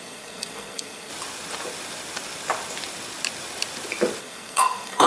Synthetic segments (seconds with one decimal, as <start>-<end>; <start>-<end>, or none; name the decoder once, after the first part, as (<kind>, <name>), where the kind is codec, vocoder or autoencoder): 0.0-1.1 (codec, SNAC); 4.2-5.1

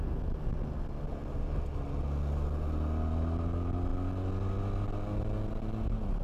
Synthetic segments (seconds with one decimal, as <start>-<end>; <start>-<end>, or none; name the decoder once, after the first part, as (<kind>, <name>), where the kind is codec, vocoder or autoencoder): none